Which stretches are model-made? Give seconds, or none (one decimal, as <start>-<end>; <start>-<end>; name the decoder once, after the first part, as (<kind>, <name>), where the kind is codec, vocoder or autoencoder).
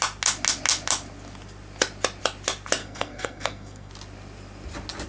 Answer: 2.8-3.9 (codec, SNAC)